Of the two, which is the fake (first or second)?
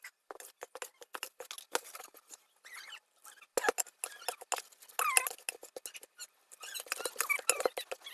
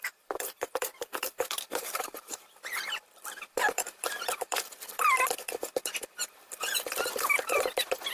second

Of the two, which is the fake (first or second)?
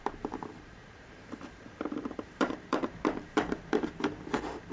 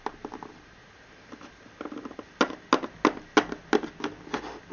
first